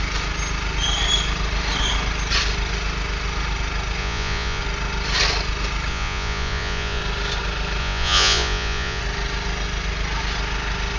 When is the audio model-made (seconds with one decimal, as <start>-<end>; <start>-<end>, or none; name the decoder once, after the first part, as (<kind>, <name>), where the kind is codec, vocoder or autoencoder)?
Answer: 4.0-4.6 (vocoder, Vocos); 5.9-7.0; 7.8-9.0